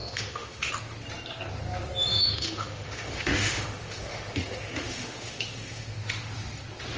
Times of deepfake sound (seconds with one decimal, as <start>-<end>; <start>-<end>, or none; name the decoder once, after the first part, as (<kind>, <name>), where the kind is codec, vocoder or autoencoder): 0.0-0.7 (autoencoder, DAC-VAE); 2.1-6.3